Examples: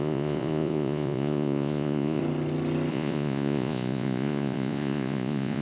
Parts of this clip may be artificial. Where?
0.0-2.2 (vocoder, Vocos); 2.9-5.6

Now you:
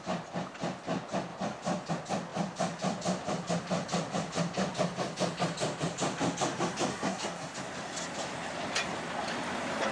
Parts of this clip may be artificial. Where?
6.9-7.5 (codec, SNAC)